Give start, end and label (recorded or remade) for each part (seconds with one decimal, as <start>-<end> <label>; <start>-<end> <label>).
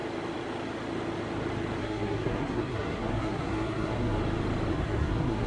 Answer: 0.0-1.8 recorded; 1.8-4.2 remade; 4.2-4.7 recorded; 4.7-5.5 remade